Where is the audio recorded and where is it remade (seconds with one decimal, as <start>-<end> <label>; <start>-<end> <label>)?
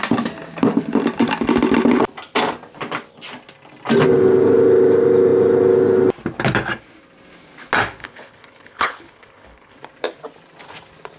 0.0-8.0 recorded; 8.0-9.8 remade; 9.8-11.2 recorded